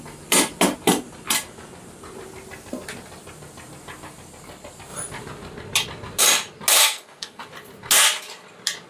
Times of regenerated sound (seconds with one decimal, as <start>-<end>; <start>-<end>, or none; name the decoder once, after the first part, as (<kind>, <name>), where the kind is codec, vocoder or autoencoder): 6.7-7.4 (codec, SNAC)

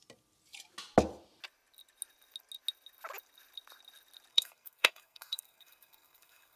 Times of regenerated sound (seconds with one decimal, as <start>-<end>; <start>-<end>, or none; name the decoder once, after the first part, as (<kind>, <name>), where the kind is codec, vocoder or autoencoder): 4.3-6.6 (codec, SNAC)

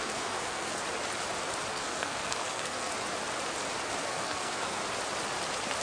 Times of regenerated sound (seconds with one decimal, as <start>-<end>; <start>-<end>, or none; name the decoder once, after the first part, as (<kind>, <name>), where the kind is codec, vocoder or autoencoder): 0.0-0.8 (codec, SNAC); 1.7-2.9; 4.0-4.8

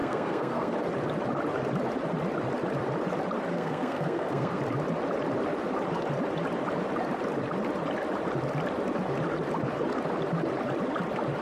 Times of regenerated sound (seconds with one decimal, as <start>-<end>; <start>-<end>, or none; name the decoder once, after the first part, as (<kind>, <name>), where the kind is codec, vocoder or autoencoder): 0.0-0.7 (codec, SNAC); 3.5-4.6